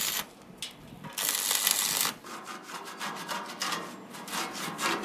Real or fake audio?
real